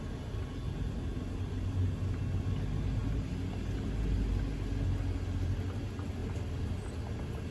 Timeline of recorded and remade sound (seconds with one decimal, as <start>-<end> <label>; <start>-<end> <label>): 0.0-7.5 recorded